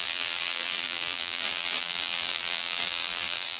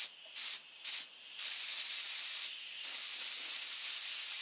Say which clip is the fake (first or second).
first